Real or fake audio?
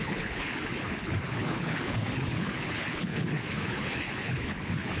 fake